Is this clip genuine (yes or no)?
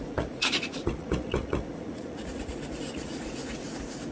no